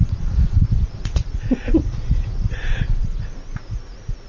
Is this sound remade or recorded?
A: remade